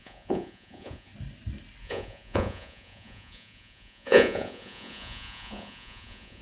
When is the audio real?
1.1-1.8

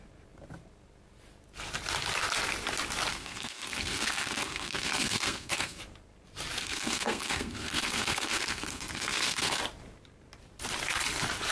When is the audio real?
0.0-3.1; 5.8-6.6; 9.6-11.5

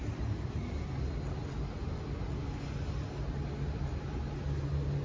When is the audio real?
0.6-5.0

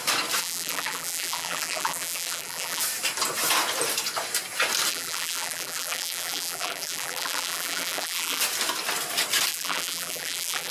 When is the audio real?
0.0-0.4; 2.8-4.9; 8.4-9.5

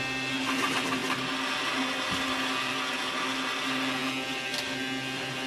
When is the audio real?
0.0-5.5

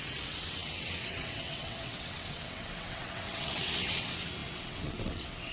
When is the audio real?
none

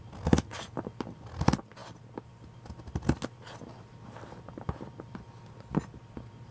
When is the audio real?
0.0-6.5